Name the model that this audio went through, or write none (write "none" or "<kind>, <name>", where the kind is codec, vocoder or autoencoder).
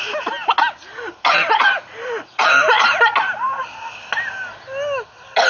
none